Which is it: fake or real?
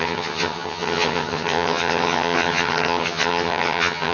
fake